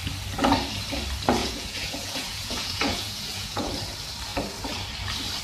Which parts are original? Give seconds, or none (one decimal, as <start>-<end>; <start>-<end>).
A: 0.0-1.4; 3.7-5.4